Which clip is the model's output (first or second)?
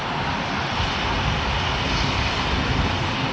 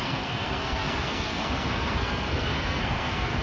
second